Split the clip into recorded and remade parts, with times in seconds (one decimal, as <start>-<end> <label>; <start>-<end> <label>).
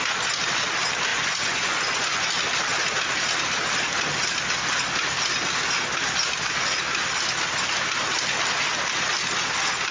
0.0-1.1 recorded; 1.1-2.3 remade; 2.3-9.9 recorded